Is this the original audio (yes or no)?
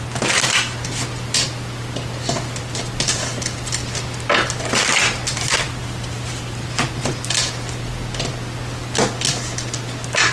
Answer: yes